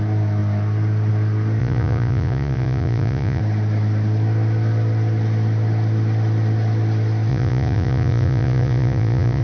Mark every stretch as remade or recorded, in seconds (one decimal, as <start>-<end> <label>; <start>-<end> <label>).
0.0-1.6 recorded; 1.6-3.4 remade; 3.4-7.3 recorded; 7.3-9.4 remade